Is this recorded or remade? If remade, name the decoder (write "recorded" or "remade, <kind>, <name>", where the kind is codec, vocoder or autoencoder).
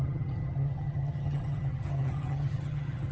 remade, vocoder, HiFi-GAN